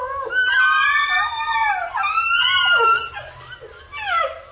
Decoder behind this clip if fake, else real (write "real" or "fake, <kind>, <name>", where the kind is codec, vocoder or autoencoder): real